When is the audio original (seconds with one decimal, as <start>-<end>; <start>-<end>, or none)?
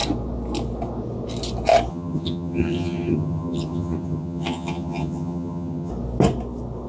0.0-1.9; 5.9-6.9